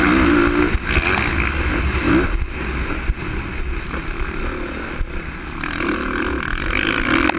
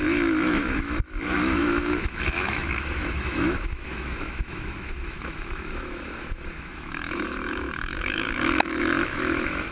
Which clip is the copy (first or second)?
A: second